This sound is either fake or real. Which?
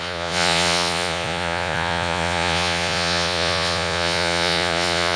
fake